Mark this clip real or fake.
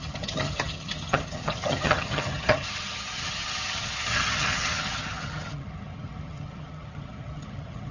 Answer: fake